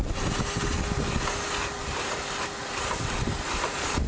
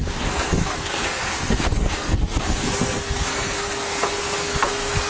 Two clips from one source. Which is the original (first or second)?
first